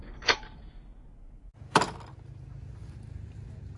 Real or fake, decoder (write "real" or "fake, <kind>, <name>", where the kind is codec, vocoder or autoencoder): real